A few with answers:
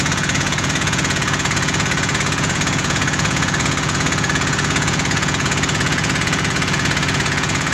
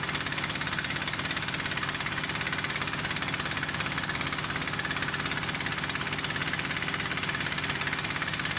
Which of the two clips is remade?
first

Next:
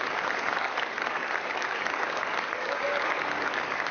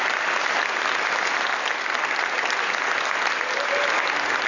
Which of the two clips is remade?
first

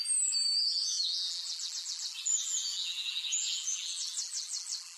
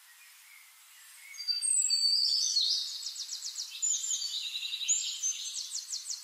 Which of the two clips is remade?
first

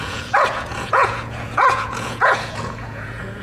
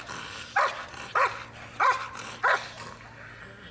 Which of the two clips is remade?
first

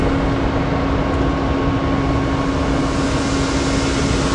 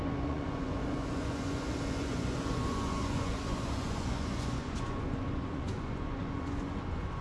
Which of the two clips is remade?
second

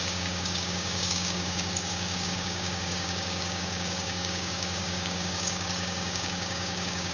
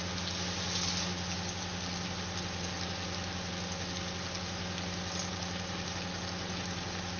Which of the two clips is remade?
first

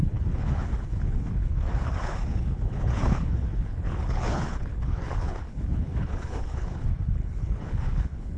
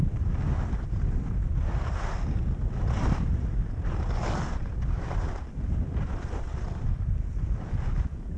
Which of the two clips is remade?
first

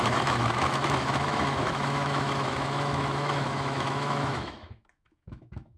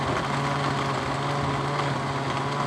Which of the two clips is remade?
first